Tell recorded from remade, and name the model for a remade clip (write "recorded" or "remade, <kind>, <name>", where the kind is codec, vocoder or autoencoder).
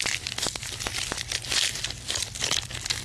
recorded